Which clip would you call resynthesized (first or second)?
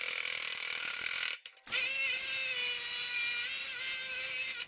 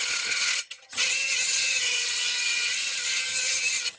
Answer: second